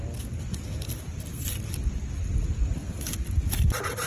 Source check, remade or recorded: recorded